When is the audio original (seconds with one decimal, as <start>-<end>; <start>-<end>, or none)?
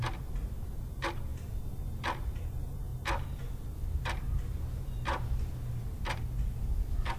1.3-2.3; 2.9-7.2